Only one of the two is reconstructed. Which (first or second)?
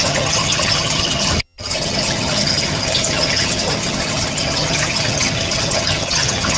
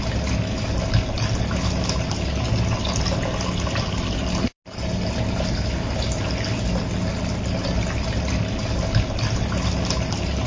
first